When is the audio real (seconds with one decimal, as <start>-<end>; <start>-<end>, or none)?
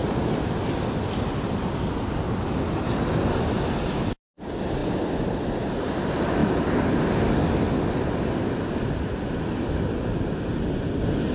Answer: 0.0-11.3